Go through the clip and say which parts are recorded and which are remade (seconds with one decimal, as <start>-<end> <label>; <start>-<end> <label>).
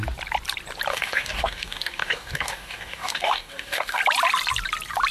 0.0-0.9 recorded; 0.9-4.0 remade; 4.0-5.1 recorded